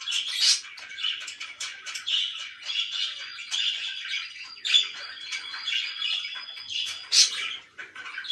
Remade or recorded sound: remade